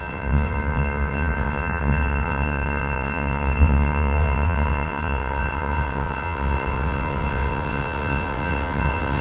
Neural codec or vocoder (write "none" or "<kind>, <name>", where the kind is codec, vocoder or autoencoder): vocoder, WaveNeXt